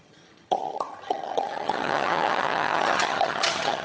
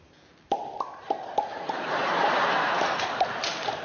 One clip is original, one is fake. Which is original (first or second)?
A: second